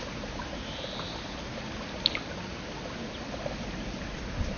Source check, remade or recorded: recorded